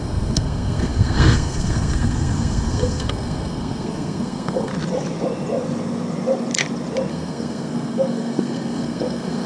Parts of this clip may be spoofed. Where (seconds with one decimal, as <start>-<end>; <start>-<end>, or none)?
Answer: 0.0-4.7; 7.1-9.5